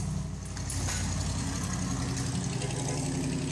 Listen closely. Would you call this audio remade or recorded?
recorded